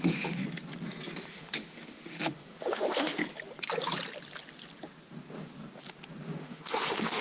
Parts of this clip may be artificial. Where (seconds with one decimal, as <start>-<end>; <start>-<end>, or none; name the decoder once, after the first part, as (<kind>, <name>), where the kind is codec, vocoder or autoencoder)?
0.0-0.4 (autoencoder, DAC-VAE); 1.3-3.2; 6.4-7.2